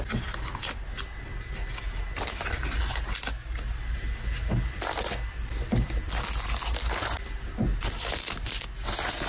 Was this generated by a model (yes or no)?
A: no